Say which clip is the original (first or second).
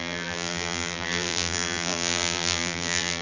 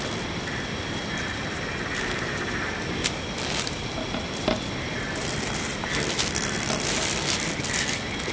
second